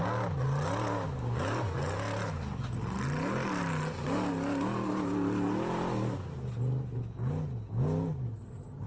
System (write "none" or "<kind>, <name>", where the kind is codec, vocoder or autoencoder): none